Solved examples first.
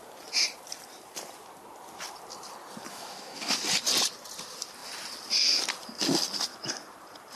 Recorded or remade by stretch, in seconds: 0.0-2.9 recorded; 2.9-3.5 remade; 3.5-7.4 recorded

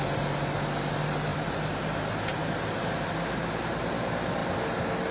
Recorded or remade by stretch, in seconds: 0.0-1.3 recorded; 1.3-1.8 remade; 1.8-2.3 recorded; 2.3-3.6 remade; 3.6-5.1 recorded

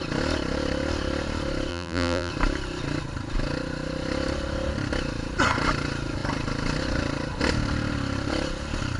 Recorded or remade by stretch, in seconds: 0.0-1.7 recorded; 1.7-2.3 remade; 2.3-9.0 recorded

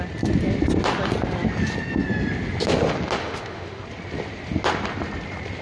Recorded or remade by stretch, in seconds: 0.0-3.2 recorded; 3.2-3.8 remade; 3.8-5.6 recorded